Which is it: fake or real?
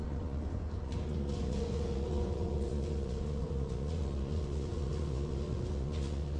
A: fake